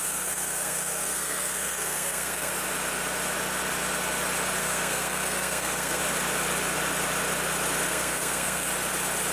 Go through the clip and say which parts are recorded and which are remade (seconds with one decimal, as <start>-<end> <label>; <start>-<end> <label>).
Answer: 0.0-2.5 remade; 2.5-4.6 recorded; 4.6-6.0 remade; 6.0-7.9 recorded; 7.9-8.7 remade; 8.7-9.3 recorded